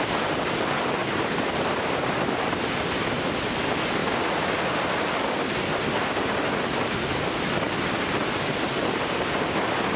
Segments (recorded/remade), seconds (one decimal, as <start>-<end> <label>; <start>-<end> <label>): 0.0-1.0 recorded; 1.0-2.7 remade; 2.7-10.0 recorded